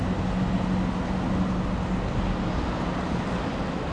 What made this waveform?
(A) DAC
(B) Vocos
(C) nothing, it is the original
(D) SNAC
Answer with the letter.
C